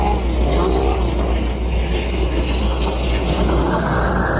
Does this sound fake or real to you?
real